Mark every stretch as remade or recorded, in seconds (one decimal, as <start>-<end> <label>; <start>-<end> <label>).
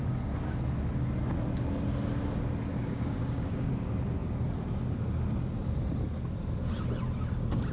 0.0-2.7 recorded; 2.7-3.7 remade; 3.7-7.7 recorded